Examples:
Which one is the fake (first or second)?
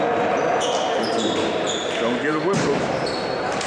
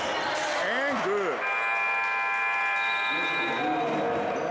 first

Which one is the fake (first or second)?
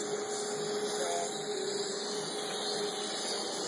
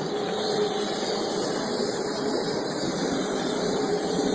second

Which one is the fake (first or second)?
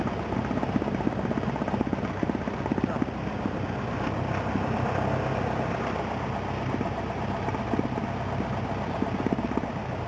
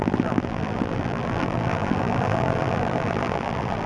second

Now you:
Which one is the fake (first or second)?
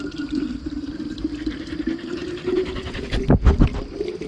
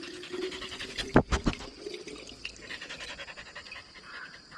first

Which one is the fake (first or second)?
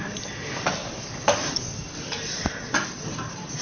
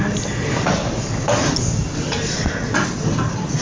first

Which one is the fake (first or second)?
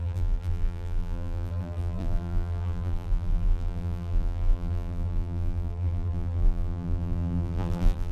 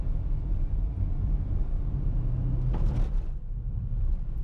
first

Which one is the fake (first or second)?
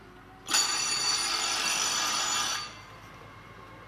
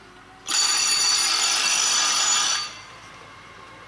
second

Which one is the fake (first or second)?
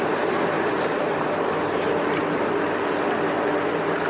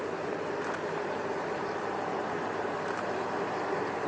second